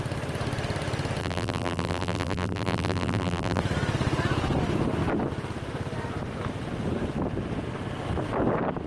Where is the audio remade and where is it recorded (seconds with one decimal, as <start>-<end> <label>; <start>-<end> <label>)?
0.0-1.2 recorded; 1.2-3.6 remade; 3.6-8.9 recorded